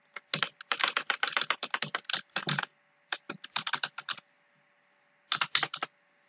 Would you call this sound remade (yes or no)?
no